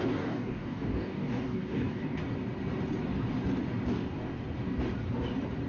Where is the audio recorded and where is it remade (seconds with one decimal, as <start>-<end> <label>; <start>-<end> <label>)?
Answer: 0.0-2.2 remade; 2.2-5.7 recorded